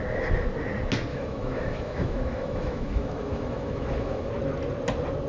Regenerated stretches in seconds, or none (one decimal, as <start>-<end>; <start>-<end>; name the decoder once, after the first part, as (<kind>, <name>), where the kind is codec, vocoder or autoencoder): 1.1-4.3 (autoencoder, DAC-VAE)